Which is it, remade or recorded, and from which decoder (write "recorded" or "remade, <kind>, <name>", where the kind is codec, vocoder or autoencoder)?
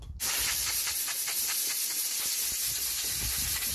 recorded